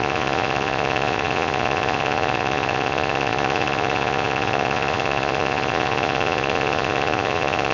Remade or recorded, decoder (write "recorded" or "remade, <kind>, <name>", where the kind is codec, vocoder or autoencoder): remade, vocoder, Vocos